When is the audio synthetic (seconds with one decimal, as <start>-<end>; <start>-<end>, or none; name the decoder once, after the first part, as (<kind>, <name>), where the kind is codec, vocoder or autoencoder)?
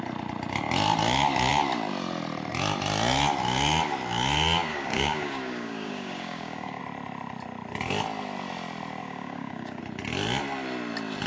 4.7-6.8 (codec, DAC); 9.0-9.8